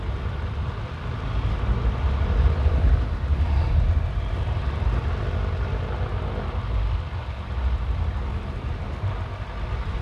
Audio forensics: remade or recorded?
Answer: recorded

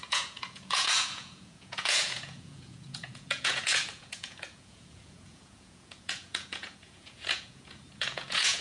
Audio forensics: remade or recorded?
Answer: remade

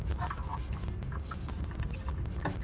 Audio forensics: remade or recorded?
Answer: recorded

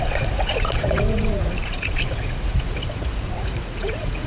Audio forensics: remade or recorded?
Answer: remade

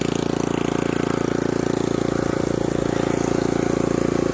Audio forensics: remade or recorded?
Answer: recorded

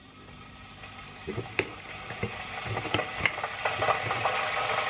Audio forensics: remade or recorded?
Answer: recorded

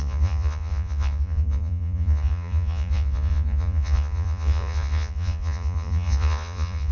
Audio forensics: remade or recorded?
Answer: remade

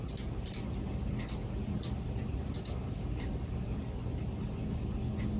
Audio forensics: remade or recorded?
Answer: recorded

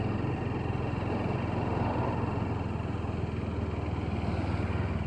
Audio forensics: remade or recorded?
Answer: recorded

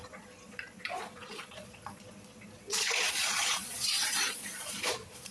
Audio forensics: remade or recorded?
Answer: remade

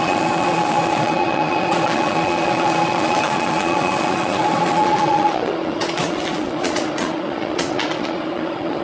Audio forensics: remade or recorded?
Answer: remade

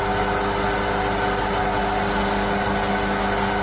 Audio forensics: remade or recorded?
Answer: recorded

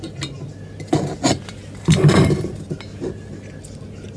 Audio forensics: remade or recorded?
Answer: recorded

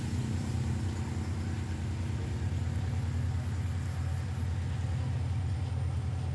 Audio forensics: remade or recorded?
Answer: recorded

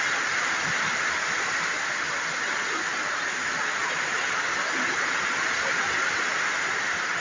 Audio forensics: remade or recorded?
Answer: recorded